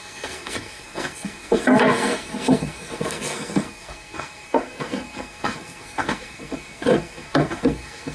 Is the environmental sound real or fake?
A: fake